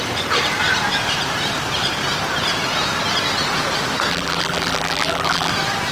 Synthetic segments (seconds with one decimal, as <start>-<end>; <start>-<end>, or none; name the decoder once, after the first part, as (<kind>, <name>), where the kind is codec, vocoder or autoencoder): 4.1-5.5 (vocoder, BigVGAN v2)

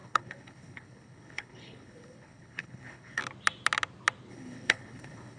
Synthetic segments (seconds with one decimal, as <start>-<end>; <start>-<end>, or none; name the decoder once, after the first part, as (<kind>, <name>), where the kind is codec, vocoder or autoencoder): 0.0-3.2 (codec, HILCodec); 4.3-5.4

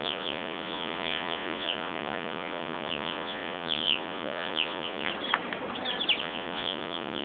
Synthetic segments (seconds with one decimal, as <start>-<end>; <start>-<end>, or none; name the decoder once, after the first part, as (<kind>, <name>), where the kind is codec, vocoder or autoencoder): 0.0-5.1 (vocoder, Vocos); 6.2-7.2

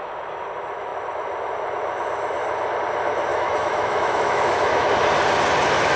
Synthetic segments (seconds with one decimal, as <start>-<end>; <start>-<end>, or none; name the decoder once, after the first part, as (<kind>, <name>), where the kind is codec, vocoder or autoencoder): 3.3-5.0 (autoencoder, DAC-VAE)